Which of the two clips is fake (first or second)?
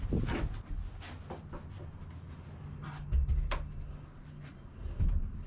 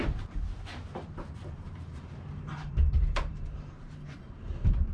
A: second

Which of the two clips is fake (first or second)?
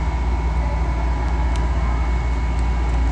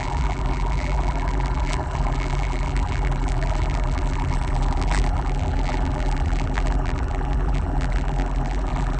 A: second